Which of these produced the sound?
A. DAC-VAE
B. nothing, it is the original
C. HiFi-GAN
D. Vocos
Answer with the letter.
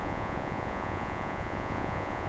D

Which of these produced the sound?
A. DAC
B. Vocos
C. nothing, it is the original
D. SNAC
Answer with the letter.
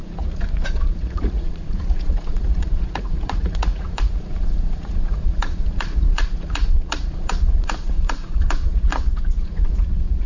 B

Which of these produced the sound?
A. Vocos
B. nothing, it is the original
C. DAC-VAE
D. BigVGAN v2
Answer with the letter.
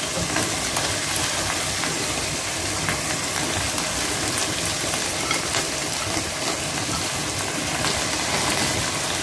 B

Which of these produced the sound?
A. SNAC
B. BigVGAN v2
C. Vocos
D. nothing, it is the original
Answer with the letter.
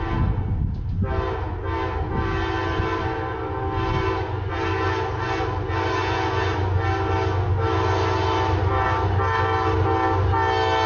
D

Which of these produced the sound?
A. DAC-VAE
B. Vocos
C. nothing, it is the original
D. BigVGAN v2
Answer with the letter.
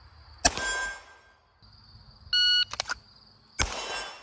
C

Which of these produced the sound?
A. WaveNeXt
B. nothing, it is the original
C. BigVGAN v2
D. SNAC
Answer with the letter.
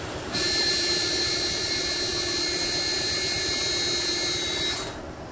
B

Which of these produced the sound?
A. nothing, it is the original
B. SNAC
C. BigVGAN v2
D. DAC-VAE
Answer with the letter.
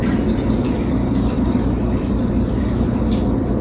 C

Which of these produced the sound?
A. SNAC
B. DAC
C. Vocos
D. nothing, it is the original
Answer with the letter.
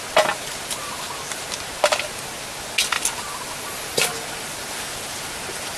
D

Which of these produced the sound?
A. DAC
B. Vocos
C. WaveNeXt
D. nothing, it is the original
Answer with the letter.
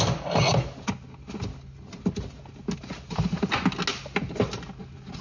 D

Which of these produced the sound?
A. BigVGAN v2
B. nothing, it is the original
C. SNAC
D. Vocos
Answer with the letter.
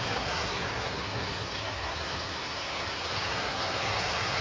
C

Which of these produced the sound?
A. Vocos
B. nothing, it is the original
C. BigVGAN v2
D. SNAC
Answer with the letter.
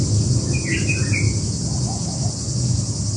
B